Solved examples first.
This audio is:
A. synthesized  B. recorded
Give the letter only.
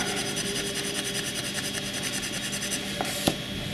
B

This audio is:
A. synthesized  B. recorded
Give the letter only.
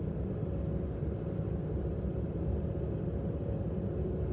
B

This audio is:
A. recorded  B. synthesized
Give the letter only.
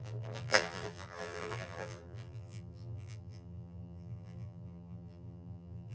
B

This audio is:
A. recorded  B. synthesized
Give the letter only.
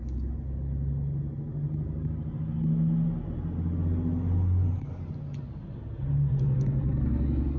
A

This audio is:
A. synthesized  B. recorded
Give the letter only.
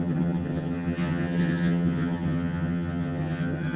A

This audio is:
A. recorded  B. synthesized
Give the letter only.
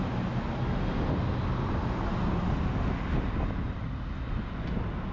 A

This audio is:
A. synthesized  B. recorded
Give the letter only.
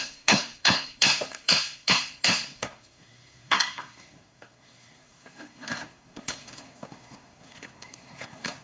A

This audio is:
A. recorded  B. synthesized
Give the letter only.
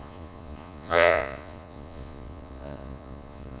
B